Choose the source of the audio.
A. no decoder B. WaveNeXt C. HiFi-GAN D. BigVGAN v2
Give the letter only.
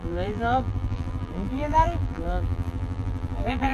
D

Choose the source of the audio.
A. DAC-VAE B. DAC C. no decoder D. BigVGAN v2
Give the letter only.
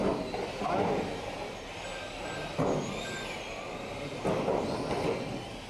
C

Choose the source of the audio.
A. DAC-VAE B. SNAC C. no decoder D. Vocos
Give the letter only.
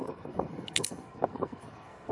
B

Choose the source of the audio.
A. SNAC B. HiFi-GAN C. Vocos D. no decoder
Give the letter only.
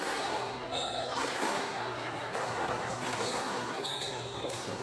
A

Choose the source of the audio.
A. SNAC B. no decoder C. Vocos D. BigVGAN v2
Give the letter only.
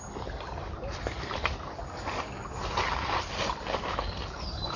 B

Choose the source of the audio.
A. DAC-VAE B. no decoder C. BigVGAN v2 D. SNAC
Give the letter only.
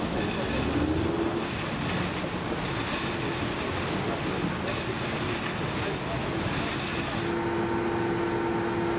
B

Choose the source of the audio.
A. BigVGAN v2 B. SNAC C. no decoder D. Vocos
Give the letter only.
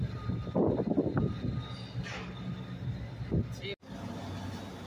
C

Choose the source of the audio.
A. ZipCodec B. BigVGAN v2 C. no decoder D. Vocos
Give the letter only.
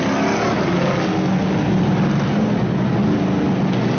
C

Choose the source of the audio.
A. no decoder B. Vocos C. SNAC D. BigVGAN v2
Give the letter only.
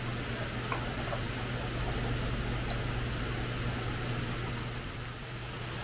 A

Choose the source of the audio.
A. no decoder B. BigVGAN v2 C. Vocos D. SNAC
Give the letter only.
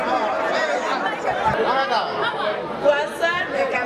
A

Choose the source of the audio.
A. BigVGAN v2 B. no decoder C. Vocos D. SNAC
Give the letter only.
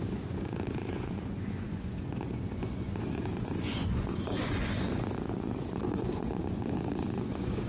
C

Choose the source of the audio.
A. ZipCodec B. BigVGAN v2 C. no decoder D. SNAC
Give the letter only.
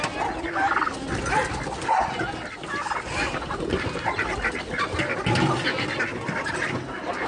C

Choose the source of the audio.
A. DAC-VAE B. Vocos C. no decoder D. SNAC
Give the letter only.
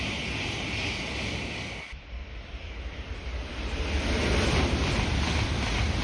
C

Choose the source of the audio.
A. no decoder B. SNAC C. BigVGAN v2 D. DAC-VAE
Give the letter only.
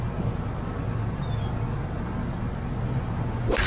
A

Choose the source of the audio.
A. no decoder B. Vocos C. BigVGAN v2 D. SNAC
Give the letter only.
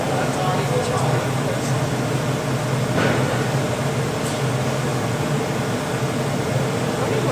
A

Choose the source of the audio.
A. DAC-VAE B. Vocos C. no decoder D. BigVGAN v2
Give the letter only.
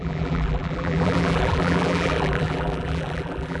D